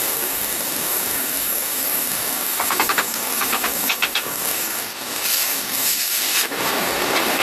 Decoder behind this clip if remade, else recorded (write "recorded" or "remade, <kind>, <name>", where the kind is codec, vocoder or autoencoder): remade, codec, DAC